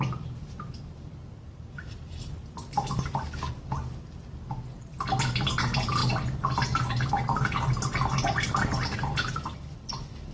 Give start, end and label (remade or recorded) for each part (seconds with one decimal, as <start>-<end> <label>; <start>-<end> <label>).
0.0-10.3 recorded